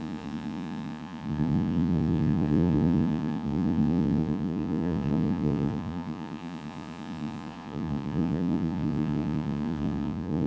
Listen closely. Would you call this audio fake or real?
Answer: fake